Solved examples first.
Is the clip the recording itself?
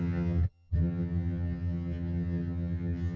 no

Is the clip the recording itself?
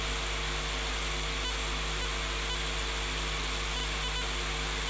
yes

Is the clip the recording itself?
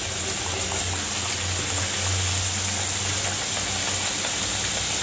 yes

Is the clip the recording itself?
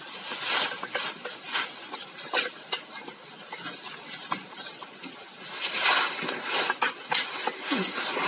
yes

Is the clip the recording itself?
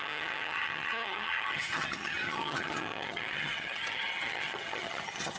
no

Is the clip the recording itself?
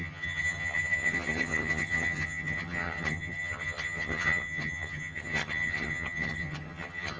no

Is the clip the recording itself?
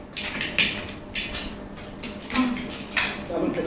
yes